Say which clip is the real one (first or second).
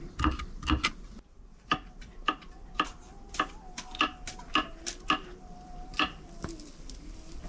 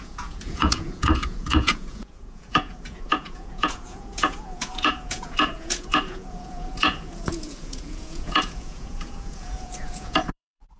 first